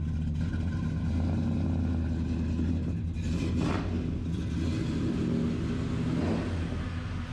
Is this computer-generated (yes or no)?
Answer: no